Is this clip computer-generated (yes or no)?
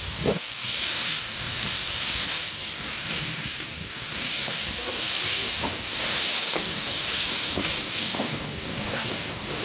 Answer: yes